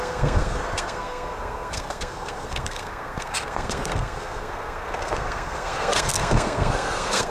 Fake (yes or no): yes